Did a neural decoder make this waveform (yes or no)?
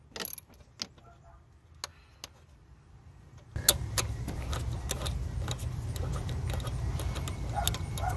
no